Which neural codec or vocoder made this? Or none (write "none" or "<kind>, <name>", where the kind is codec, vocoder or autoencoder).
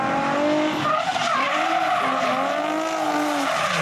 none